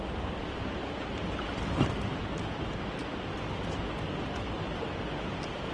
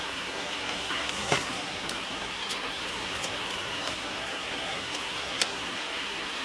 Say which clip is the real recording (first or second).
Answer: first